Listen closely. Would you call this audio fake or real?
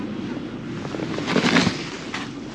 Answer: real